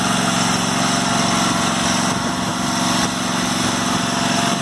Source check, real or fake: real